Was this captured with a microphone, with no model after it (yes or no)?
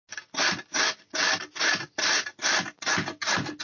yes